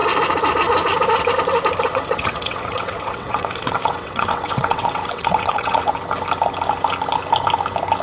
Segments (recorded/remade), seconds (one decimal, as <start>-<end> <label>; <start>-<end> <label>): 0.0-1.9 recorded; 1.9-5.9 remade; 5.9-8.0 recorded